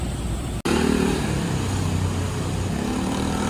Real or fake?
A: real